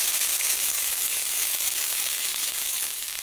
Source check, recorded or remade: remade